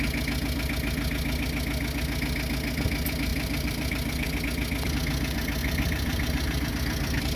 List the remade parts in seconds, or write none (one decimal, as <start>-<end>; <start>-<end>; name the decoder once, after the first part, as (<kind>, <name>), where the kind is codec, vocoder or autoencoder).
3.3-4.4 (vocoder, BigVGAN v2); 5.6-6.7